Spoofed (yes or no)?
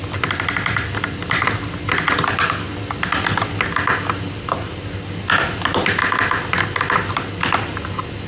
no